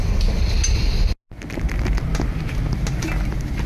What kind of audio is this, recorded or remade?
recorded